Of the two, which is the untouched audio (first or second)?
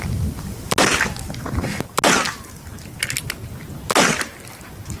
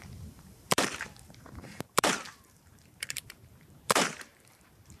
first